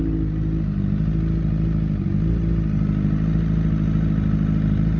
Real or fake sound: real